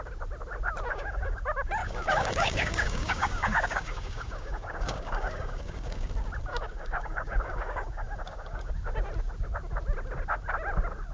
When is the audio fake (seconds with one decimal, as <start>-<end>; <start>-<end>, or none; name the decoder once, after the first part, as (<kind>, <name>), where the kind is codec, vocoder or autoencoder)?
0.9-1.4 (codec, DAC); 1.8-6.1; 6.5-8.7

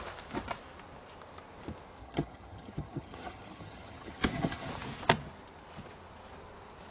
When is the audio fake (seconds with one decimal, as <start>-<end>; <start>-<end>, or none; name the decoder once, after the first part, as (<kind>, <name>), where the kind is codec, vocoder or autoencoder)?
2.0-4.7 (vocoder, HiFi-GAN)